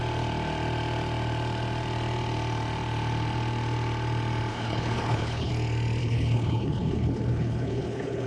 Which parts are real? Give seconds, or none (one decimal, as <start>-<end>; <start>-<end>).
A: 0.0-4.5; 5.5-6.0

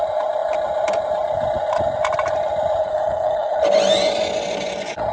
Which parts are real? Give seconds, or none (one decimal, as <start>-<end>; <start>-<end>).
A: 0.0-2.8; 3.6-5.1

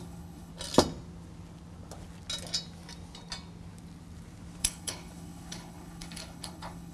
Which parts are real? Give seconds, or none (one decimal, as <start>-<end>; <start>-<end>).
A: 0.5-4.6

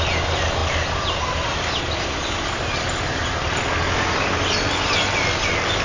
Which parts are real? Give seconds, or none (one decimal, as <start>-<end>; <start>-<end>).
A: 0.0-5.8

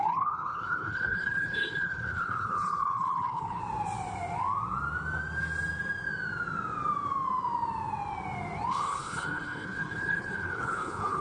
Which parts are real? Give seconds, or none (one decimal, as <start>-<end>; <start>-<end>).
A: 3.6-8.7

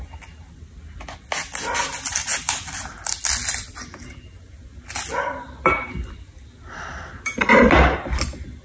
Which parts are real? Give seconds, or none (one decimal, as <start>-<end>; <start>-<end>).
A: 0.0-8.6

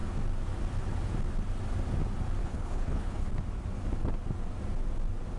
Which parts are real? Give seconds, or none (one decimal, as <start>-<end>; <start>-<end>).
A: 0.0-2.4; 3.3-5.4